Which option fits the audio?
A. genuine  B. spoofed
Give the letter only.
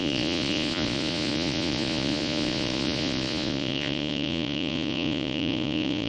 B